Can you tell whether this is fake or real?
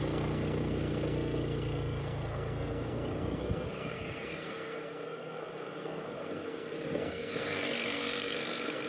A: fake